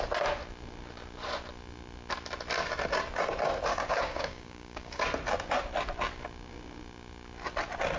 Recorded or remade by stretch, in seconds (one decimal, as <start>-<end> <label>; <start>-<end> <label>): 0.0-3.7 recorded; 3.7-5.0 remade; 5.0-8.0 recorded

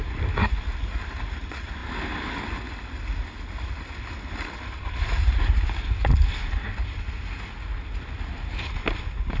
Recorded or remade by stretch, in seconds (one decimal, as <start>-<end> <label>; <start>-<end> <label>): 0.0-9.4 recorded